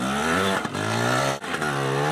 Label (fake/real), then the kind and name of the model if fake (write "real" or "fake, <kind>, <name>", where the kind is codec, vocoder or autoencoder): real